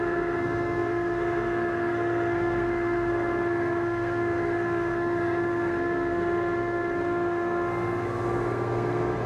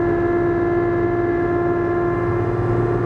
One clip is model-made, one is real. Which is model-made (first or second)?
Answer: first